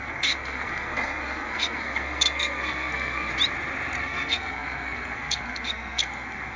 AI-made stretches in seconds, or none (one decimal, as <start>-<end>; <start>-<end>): 0.0-3.3; 4.0-6.6